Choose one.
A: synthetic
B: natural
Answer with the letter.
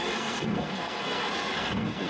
A